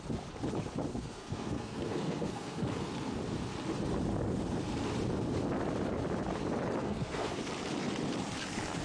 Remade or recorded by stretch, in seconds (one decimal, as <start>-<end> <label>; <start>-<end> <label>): 0.0-0.9 recorded; 0.9-2.9 remade; 2.9-6.8 recorded; 6.8-7.4 remade; 7.4-8.8 recorded